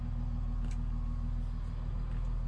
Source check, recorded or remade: recorded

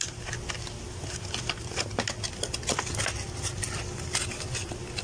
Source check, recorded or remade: recorded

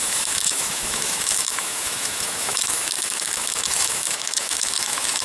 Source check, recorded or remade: remade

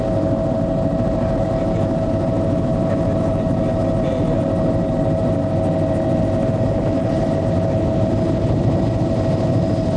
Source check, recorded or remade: recorded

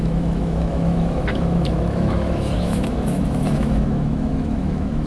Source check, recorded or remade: remade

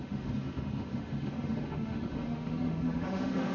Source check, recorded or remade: remade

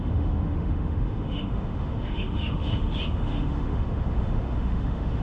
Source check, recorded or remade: remade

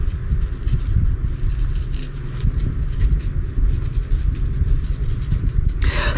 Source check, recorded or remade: recorded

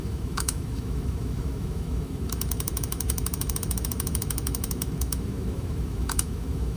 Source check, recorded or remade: remade